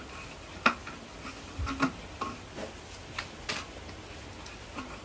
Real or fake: real